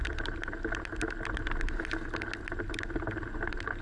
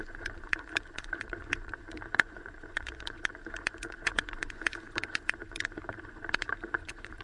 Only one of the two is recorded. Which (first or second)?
first